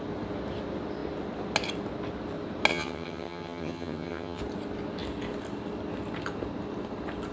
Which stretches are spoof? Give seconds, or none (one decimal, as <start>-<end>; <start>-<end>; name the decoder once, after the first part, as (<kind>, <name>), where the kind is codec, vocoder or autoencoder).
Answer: 2.7-4.4 (vocoder, HiFi-GAN)